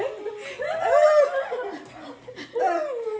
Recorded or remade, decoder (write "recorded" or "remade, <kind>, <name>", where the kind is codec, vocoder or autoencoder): recorded